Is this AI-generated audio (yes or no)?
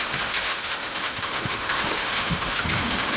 yes